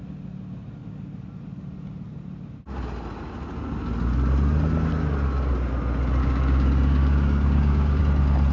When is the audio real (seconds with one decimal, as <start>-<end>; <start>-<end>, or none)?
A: 0.0-6.2; 8.0-8.5